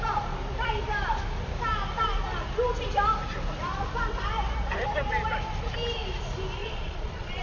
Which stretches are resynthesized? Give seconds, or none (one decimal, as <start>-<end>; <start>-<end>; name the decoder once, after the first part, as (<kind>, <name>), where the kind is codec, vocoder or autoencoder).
6.6-7.4 (vocoder, Vocos)